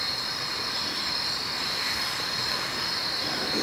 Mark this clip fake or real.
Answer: real